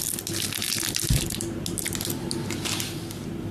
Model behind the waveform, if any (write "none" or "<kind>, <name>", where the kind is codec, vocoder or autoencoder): none